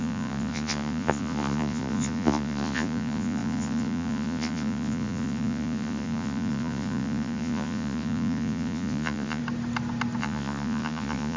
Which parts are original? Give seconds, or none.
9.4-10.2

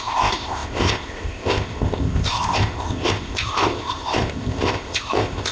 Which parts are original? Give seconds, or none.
none

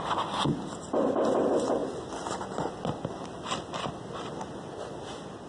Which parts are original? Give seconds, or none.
0.0-5.5

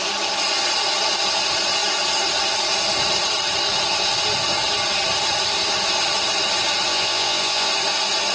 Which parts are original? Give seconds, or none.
0.0-6.9; 7.7-8.3

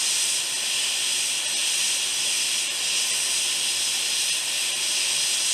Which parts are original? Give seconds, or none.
0.0-5.5

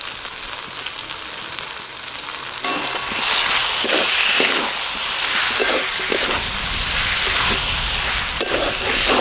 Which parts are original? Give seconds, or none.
0.0-9.2

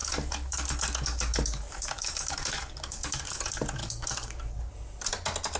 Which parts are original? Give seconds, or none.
3.4-3.8; 4.5-5.6